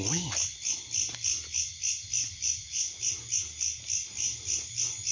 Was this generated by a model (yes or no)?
no